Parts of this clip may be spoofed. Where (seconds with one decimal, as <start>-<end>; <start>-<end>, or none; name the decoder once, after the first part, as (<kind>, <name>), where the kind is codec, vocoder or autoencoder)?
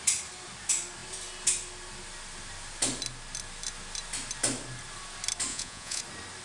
5.5-6.0 (vocoder, Vocos)